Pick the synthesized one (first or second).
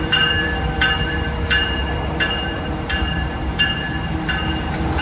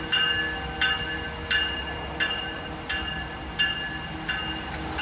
first